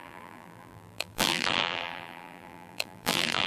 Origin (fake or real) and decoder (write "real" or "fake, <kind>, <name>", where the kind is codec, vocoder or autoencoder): fake, vocoder, BigVGAN v2